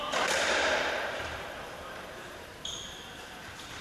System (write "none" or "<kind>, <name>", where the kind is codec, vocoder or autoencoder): vocoder, BigVGAN v2